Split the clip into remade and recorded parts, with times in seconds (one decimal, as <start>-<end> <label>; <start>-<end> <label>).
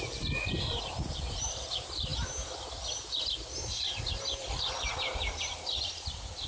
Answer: 0.0-2.1 remade; 2.1-5.8 recorded; 5.8-6.5 remade